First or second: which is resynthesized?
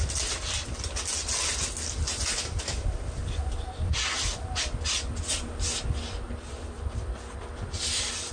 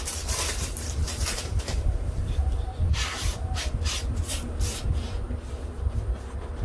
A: second